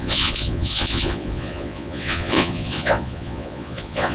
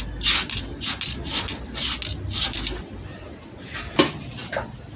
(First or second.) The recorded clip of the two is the second